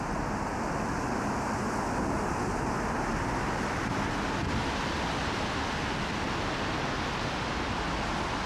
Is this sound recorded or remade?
recorded